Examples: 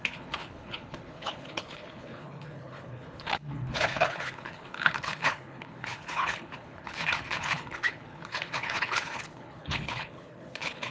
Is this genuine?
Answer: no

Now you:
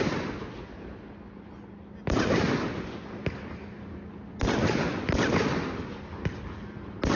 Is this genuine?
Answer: yes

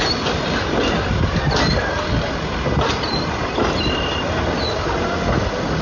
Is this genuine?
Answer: yes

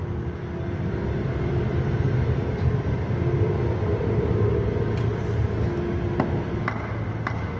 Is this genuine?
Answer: yes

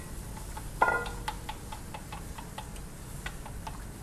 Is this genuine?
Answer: yes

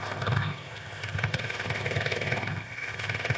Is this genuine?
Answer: no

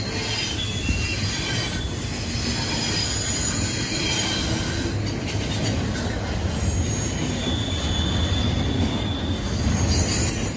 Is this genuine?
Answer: yes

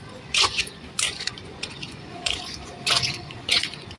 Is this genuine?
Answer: no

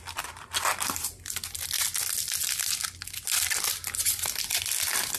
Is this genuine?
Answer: yes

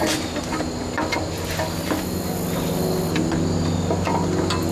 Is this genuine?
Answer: yes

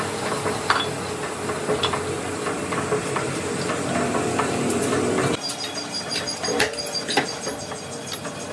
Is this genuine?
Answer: yes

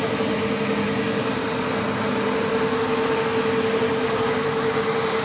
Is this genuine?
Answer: yes